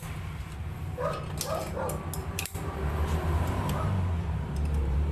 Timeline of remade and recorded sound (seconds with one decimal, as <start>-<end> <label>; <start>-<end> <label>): 0.0-2.2 recorded; 2.2-5.1 remade